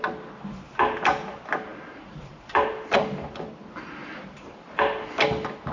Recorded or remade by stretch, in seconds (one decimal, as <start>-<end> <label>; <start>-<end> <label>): 0.0-1.7 recorded; 1.7-3.0 remade; 3.0-4.0 recorded; 4.0-4.8 remade; 4.8-5.7 recorded

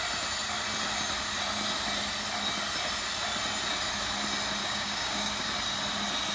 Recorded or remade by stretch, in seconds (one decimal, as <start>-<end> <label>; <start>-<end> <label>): 0.0-4.6 recorded; 4.6-5.3 remade; 5.3-6.3 recorded